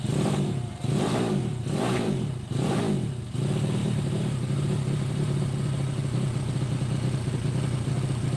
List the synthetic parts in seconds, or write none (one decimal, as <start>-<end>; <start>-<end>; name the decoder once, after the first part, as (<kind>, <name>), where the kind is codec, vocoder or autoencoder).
0.0-2.8 (vocoder, BigVGAN v2); 3.8-6.4